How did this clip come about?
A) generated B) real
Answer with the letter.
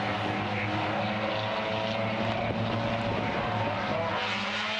B